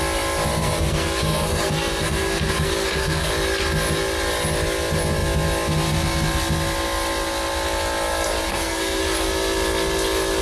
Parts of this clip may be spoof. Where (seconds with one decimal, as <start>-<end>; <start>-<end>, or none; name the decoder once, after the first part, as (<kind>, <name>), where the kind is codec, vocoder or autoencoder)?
0.6-3.3 (codec, SNAC); 8.5-9.0